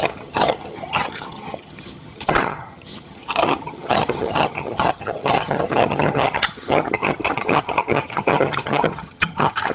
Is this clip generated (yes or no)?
yes